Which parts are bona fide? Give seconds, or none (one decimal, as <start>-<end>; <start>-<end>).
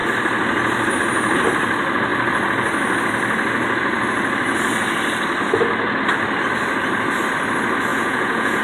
0.0-7.9